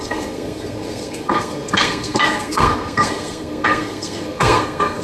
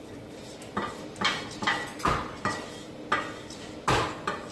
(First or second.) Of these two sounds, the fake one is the first